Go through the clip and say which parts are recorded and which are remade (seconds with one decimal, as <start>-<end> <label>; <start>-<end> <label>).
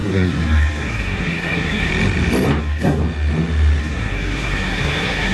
0.0-1.9 remade; 1.9-2.6 recorded; 2.6-3.0 remade; 3.0-3.8 recorded; 3.8-5.3 remade